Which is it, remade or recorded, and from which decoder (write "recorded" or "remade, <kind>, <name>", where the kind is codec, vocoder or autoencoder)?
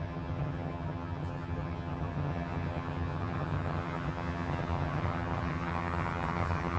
remade, vocoder, HiFi-GAN